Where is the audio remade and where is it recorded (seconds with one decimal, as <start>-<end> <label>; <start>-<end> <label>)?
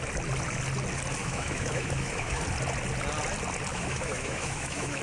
0.0-1.2 recorded; 1.2-2.4 remade; 2.4-3.7 recorded; 3.7-5.0 remade